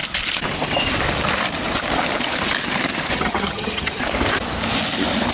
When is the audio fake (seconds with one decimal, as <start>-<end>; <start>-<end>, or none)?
3.1-4.0